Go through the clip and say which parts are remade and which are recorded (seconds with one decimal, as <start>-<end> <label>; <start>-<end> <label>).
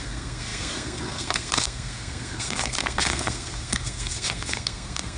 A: 0.0-5.2 remade